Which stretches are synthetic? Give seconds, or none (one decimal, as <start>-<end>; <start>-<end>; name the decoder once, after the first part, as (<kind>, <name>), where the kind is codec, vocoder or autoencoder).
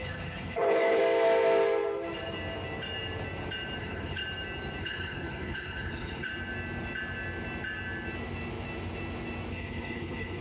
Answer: 0.0-1.0 (codec, HILCodec); 3.8-4.2; 4.8-6.3; 9.5-10.4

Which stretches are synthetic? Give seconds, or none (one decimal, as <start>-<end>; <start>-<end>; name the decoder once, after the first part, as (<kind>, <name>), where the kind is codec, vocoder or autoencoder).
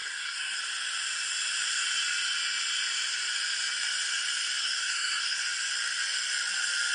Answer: 0.0-0.6 (codec, SNAC); 4.6-5.4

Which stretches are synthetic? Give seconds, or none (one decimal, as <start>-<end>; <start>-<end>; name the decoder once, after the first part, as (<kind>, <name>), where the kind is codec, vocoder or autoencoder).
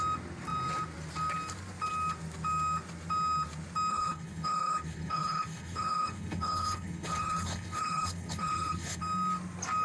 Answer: 3.9-9.0 (codec, HILCodec)